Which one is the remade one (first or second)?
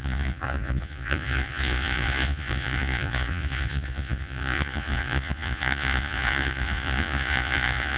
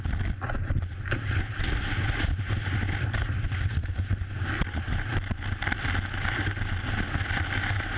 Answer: first